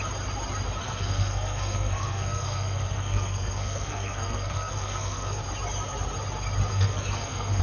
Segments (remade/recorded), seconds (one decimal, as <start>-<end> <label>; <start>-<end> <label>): 0.0-0.8 recorded; 0.8-5.4 remade; 5.4-6.7 recorded; 6.7-7.6 remade